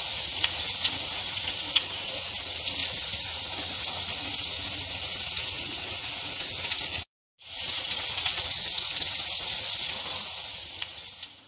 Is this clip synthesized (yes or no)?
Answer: yes